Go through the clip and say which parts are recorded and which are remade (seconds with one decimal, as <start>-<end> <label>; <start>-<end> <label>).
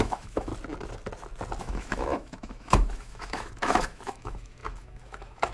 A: 0.0-0.5 remade; 0.5-1.6 recorded; 1.6-5.5 remade